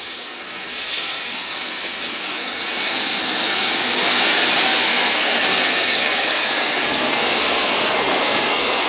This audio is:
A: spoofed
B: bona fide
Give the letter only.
A